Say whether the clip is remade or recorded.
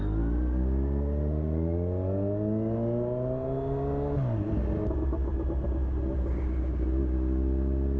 recorded